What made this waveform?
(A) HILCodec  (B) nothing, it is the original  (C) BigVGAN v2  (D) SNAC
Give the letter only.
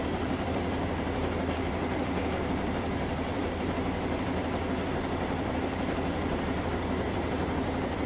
C